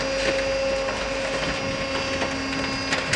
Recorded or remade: recorded